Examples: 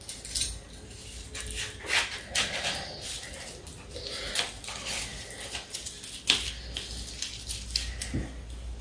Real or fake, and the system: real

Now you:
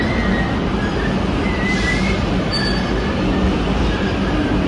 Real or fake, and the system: real